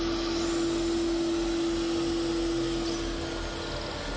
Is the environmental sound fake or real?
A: real